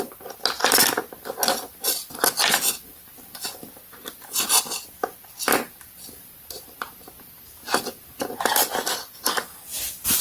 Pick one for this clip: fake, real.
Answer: real